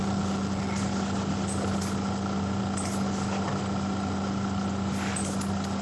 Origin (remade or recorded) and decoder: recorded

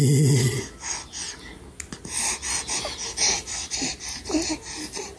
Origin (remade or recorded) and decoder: recorded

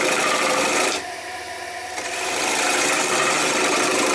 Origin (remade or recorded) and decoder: remade, vocoder, BigVGAN v2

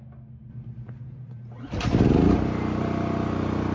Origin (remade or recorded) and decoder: recorded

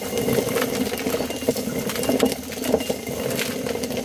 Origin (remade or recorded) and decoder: recorded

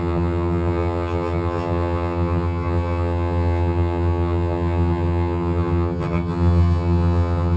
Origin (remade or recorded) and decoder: remade, vocoder, HiFi-GAN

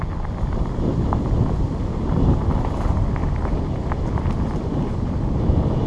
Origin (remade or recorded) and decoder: recorded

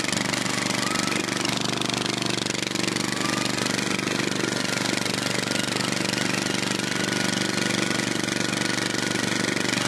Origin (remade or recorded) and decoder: recorded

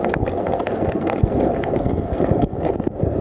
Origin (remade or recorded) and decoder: remade, codec, SNAC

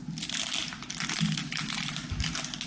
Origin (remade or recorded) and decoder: recorded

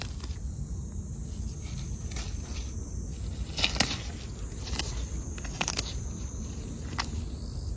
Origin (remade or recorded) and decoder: recorded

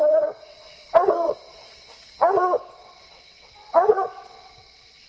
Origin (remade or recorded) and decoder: remade, vocoder, WaveNeXt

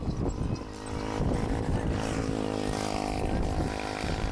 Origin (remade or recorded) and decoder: recorded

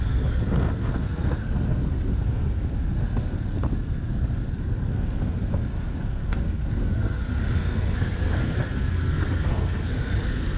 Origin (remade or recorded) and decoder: remade, codec, SNAC